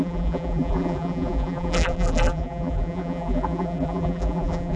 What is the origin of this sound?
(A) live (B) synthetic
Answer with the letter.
B